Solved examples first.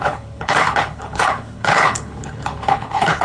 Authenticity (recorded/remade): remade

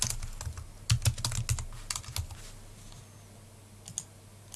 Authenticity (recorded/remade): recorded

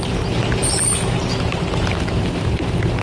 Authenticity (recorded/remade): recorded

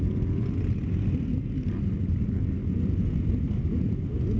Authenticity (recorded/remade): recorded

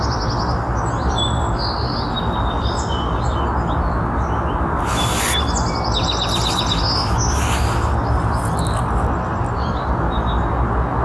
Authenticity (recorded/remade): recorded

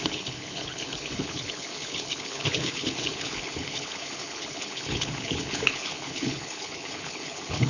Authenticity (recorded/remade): remade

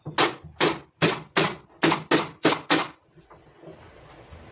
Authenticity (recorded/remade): recorded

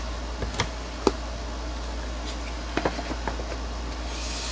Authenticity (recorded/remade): recorded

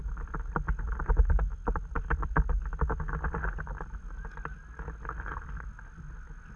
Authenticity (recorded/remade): recorded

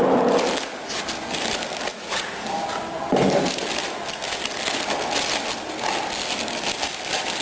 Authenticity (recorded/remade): recorded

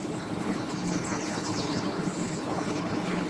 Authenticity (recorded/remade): remade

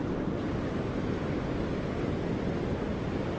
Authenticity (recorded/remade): recorded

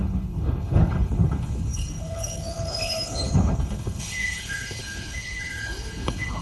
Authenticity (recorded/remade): remade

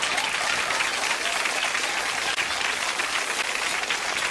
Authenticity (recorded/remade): recorded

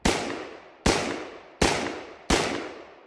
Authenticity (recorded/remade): recorded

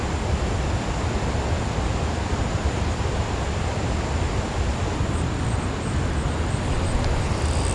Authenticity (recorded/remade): recorded